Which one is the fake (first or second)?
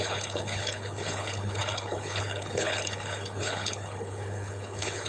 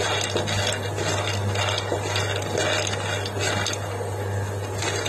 first